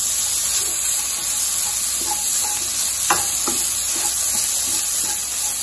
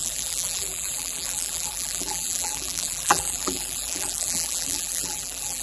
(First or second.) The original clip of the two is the first